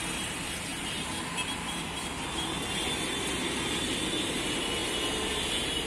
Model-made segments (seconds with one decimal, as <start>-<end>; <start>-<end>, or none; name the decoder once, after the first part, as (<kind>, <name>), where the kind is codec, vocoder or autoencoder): none